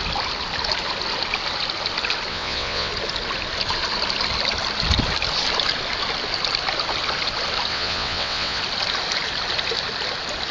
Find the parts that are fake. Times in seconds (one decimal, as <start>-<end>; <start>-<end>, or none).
2.3-2.9; 7.7-8.6